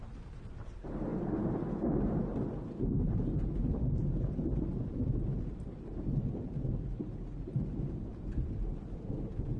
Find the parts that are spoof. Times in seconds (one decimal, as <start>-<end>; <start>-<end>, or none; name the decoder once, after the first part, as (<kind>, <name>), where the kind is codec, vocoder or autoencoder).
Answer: none